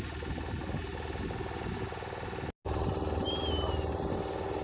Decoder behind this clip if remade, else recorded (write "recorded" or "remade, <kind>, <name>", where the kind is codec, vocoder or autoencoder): recorded